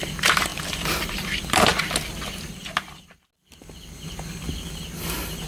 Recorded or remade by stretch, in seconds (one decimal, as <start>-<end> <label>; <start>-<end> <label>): 0.0-1.7 remade; 1.7-5.0 recorded; 5.0-5.5 remade